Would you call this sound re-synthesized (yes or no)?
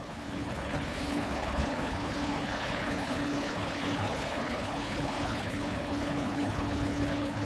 yes